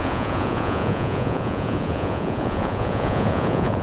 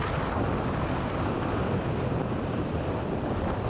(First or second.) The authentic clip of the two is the second